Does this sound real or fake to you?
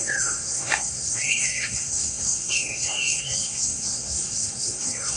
fake